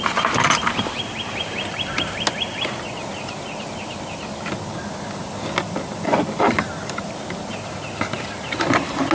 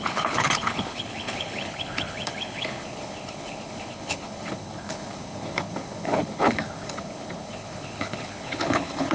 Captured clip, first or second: first